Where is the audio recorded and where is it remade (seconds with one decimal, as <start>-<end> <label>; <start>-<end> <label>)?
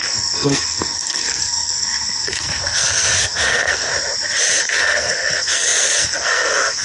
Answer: 0.0-3.9 remade; 3.9-4.6 recorded; 4.6-6.8 remade